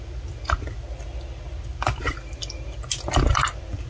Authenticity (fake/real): real